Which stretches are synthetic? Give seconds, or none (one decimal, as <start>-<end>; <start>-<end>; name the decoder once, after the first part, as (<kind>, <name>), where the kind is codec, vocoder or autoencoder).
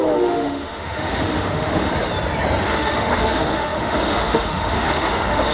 0.0-1.9 (autoencoder, DAC-VAE); 2.6-5.5